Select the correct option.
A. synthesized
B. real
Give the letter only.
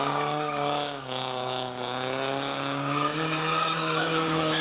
A